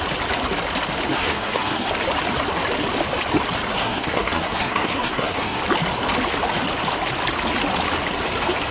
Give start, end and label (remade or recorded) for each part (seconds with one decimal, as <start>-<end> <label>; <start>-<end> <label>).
0.0-1.1 recorded; 1.1-1.9 remade; 1.9-3.8 recorded; 3.8-5.6 remade; 5.6-8.7 recorded